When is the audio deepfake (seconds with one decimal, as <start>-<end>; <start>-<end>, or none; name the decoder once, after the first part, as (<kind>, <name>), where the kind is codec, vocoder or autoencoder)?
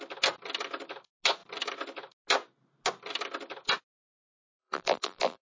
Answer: 4.6-5.4 (vocoder, BigVGAN v2)